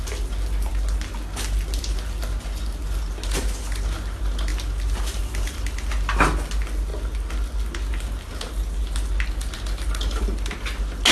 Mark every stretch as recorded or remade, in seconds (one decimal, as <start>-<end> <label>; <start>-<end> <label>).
0.0-11.1 recorded